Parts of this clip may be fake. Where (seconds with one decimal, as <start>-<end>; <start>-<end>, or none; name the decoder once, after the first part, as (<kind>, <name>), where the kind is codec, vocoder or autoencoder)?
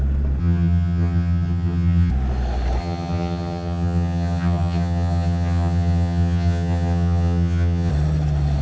0.4-2.1 (vocoder, HiFi-GAN); 2.8-7.9